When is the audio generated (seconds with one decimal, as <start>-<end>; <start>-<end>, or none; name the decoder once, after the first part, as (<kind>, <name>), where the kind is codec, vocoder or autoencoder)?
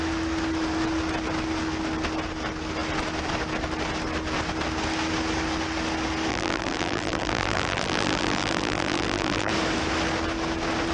6.3-9.5 (vocoder, BigVGAN v2)